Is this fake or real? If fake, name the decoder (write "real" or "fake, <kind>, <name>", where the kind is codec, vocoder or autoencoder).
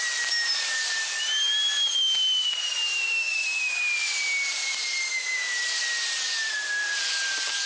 real